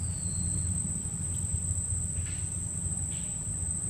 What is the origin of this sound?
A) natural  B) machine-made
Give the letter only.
A